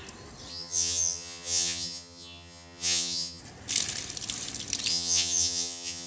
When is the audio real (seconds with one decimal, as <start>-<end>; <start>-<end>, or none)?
0.0-0.5; 3.4-4.9